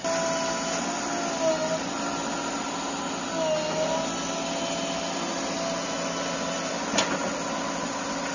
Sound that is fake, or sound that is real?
real